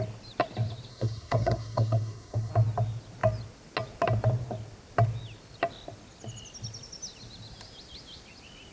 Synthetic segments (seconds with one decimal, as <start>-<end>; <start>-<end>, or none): 0.9-2.5